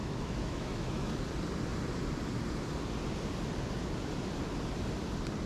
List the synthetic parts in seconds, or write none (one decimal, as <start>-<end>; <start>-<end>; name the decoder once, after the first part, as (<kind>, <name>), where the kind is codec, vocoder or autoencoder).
0.0-1.1 (autoencoder, DAC-VAE)